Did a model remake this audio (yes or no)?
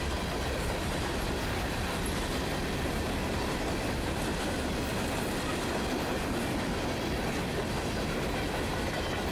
no